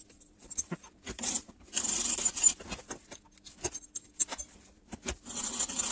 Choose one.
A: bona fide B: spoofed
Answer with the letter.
B